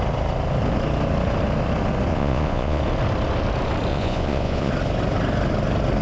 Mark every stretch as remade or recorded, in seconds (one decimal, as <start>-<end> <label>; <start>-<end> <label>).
0.0-2.1 recorded; 2.1-2.8 remade; 2.8-3.9 recorded; 3.9-4.7 remade; 4.7-6.0 recorded